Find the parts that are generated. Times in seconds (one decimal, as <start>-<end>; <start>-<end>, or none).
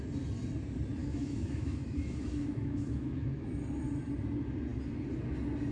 1.0-3.5